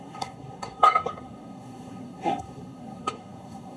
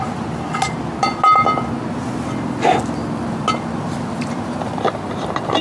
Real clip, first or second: second